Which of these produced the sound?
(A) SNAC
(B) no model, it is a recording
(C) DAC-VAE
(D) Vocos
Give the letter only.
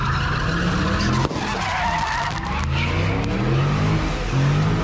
B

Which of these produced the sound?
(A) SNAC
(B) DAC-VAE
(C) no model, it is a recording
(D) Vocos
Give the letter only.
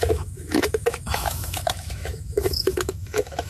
B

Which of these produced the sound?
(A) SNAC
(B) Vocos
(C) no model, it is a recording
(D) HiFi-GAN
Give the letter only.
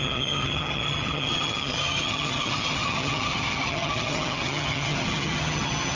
D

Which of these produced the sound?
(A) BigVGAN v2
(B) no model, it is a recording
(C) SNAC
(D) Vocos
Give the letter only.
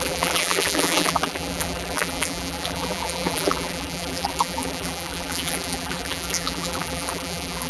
A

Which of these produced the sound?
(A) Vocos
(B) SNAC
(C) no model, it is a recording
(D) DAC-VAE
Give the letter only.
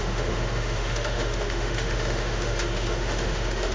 D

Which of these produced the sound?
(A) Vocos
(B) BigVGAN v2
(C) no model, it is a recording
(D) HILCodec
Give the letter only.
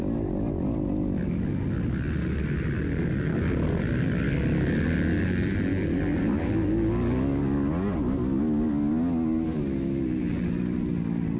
C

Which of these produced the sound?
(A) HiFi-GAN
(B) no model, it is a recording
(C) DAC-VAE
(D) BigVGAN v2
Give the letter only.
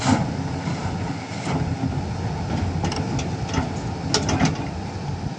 B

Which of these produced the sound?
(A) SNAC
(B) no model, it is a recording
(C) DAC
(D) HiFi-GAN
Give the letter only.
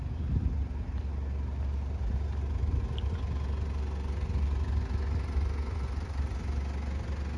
B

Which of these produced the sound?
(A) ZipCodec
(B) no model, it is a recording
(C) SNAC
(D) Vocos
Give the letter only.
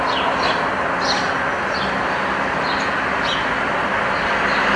B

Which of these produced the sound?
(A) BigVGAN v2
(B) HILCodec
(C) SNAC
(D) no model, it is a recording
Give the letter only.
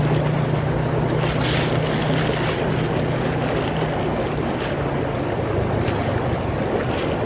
D